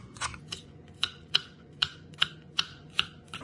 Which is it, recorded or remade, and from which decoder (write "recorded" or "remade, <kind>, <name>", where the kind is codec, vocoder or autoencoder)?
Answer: remade, vocoder, Vocos